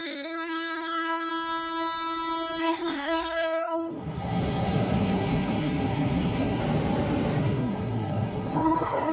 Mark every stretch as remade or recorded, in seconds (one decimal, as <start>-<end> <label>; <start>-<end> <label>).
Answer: 0.0-1.3 remade; 1.3-2.6 recorded; 2.6-6.6 remade; 6.6-7.4 recorded; 7.4-9.1 remade